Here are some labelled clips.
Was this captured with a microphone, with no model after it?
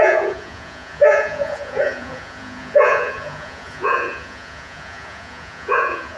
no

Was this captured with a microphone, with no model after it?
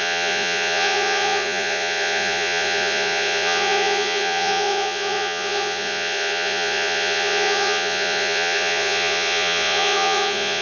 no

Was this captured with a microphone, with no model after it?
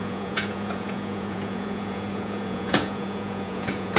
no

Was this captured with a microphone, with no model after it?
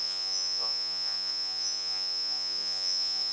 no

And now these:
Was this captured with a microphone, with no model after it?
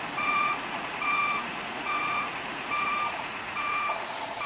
no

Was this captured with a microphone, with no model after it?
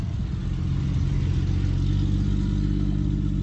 yes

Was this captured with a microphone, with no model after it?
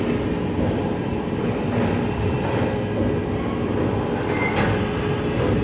yes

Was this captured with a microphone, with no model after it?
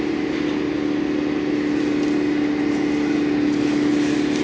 yes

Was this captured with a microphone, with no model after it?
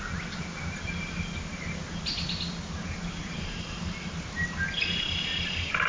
yes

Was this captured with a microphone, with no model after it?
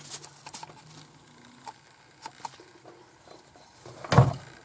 yes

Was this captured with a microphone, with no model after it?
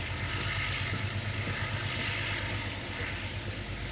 yes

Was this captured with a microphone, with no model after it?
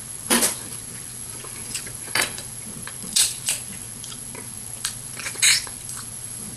no